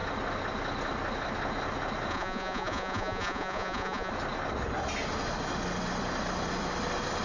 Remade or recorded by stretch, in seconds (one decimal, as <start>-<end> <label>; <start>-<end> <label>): 0.0-2.1 recorded; 2.1-4.1 remade; 4.1-7.2 recorded